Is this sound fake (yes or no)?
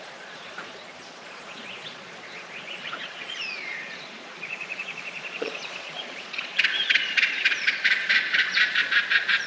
yes